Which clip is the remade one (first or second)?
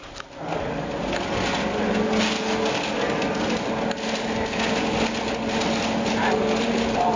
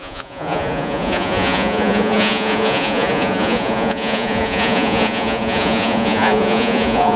second